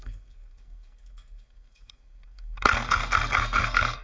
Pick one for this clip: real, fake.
fake